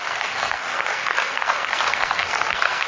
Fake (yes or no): yes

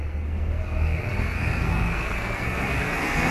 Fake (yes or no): yes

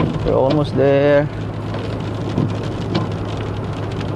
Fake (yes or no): no